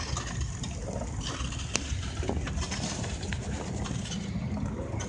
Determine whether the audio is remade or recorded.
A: recorded